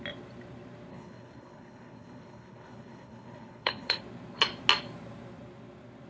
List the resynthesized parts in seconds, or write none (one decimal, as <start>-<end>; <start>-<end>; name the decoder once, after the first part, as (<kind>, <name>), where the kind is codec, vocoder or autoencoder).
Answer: 0.9-4.0 (codec, HILCodec)